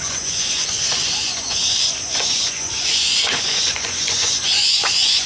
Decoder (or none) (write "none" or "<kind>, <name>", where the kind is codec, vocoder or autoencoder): vocoder, Vocos